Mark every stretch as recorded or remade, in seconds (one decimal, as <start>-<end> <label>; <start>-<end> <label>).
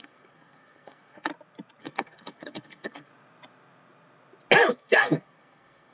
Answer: 0.0-1.3 remade; 1.3-1.8 recorded; 1.8-3.1 remade; 3.1-4.7 recorded; 4.7-5.9 remade